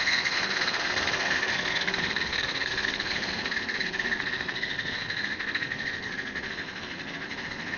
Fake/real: fake